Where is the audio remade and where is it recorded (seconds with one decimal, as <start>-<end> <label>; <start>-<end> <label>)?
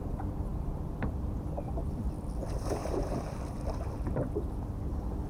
0.0-0.5 recorded; 0.5-2.2 remade; 2.2-5.3 recorded